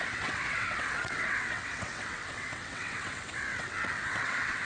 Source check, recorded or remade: remade